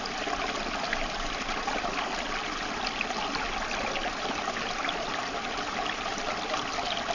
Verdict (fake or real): real